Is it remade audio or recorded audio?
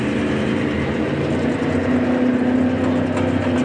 recorded